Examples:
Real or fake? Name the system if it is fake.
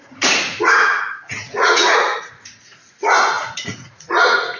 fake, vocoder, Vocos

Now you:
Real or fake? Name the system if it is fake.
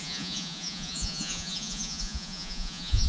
fake, vocoder, Vocos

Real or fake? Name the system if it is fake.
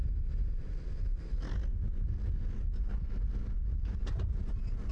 real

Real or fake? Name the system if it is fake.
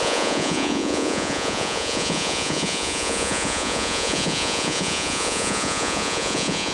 fake, vocoder, Vocos